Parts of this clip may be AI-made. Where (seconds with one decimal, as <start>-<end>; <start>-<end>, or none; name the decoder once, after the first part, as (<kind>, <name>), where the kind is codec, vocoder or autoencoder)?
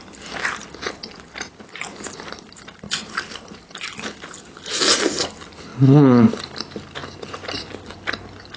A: none